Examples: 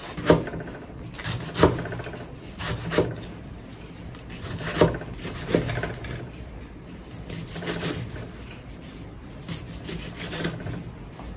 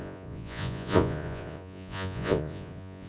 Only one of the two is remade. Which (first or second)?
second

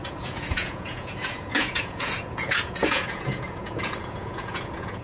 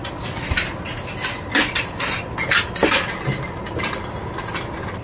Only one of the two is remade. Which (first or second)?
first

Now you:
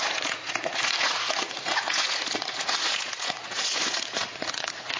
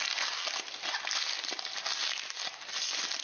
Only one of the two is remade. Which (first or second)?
first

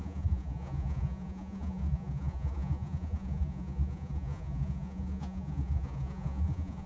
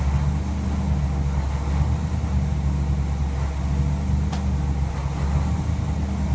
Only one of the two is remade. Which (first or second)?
first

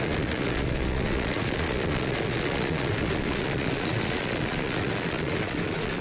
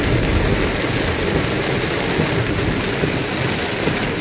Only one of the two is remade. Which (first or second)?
first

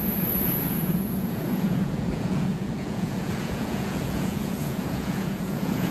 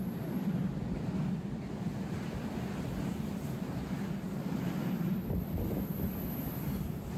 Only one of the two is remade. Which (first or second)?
first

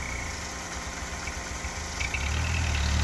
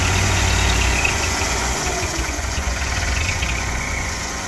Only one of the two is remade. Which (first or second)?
second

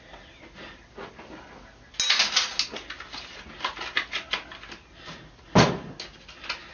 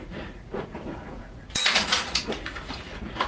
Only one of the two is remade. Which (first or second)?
second